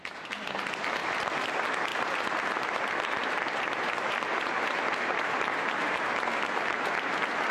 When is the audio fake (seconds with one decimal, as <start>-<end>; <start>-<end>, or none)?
1.0-1.5; 1.9-6.0